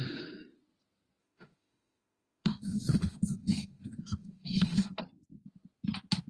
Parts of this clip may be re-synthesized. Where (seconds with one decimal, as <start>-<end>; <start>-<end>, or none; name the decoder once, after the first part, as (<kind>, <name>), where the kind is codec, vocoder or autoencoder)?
1.2-5.0 (autoencoder, DAC-VAE)